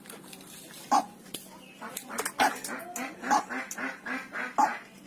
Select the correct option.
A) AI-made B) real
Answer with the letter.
B